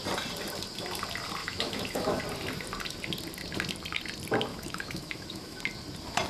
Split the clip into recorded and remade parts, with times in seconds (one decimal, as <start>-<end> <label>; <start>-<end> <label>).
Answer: 0.0-1.4 recorded; 1.4-2.2 remade; 2.2-4.5 recorded; 4.5-5.6 remade; 5.6-6.3 recorded